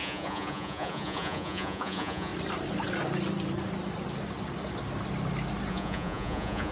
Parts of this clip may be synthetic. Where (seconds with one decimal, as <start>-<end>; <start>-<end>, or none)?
0.0-2.3; 5.7-6.7